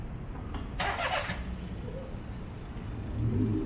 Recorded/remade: recorded